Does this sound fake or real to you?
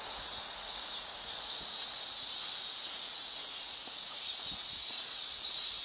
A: fake